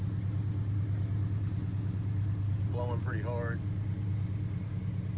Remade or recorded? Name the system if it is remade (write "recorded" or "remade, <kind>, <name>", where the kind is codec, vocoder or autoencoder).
recorded